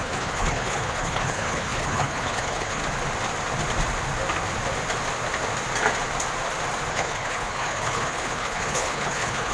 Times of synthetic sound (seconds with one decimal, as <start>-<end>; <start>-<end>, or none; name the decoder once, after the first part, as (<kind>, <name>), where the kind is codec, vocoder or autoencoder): 0.0-2.8 (codec, HILCodec); 6.9-9.5